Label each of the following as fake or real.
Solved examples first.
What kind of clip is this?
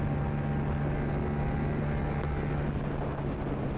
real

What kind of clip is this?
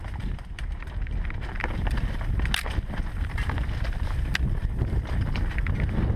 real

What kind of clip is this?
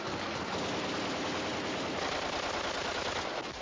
real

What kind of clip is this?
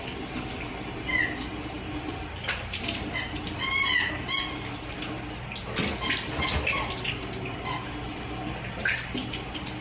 real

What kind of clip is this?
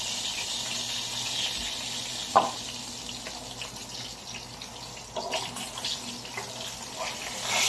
real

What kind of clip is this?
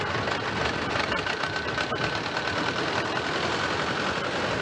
real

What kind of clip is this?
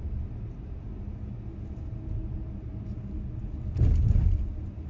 real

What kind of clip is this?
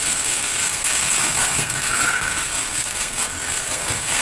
fake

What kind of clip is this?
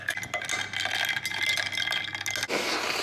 real